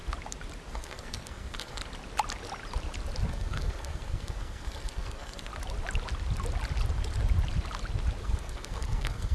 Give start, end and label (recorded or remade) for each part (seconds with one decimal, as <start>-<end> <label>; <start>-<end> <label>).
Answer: 0.0-0.7 recorded; 0.7-1.8 remade; 1.8-3.3 recorded; 3.3-5.5 remade; 5.5-8.2 recorded; 8.2-9.3 remade

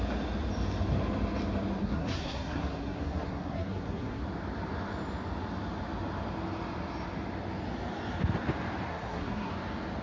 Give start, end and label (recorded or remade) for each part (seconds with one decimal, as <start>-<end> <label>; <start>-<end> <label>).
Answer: 0.0-1.8 recorded; 1.8-4.2 remade; 4.2-8.9 recorded; 8.9-9.5 remade; 9.5-10.0 recorded

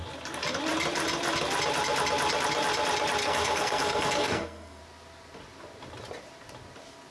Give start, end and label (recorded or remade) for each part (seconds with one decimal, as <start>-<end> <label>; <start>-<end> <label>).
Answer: 0.0-3.2 recorded; 3.2-4.8 remade; 4.8-7.1 recorded

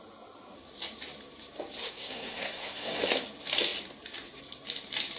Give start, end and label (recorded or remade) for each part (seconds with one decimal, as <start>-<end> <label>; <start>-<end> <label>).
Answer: 0.0-1.8 recorded; 1.8-3.0 remade; 3.0-5.2 recorded

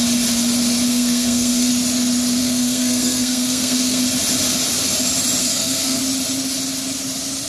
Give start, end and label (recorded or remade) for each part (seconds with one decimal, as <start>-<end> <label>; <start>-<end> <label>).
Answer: 0.0-0.9 recorded; 0.9-1.7 remade; 1.7-2.4 recorded; 2.4-4.0 remade; 4.0-5.4 recorded; 5.4-6.0 remade; 6.0-7.5 recorded